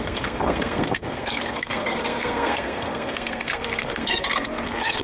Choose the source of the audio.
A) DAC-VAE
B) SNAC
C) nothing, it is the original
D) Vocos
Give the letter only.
B